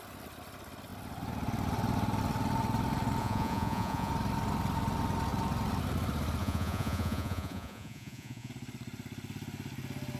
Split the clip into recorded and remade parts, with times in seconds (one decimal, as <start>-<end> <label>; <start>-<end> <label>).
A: 0.0-3.2 recorded; 3.2-4.1 remade; 4.1-6.4 recorded; 6.4-8.5 remade; 8.5-10.2 recorded